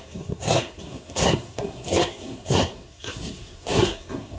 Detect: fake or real fake